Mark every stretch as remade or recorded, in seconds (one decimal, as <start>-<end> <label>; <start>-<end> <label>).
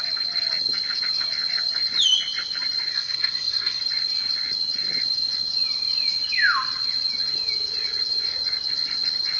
0.0-2.9 recorded; 2.9-3.8 remade; 3.8-9.4 recorded